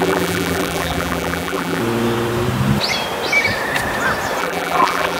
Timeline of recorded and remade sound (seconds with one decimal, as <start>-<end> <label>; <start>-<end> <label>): 0.0-1.8 remade; 1.8-4.4 recorded; 4.4-5.2 remade